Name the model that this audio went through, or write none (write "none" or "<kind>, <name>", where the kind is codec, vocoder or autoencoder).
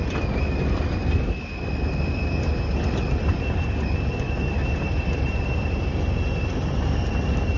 none